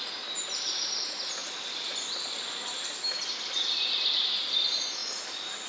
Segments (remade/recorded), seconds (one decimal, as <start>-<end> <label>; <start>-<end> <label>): 0.0-5.7 recorded